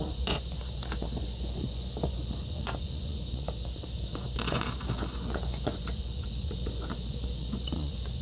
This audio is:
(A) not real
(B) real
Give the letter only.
A